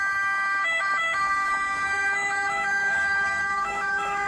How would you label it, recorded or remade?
remade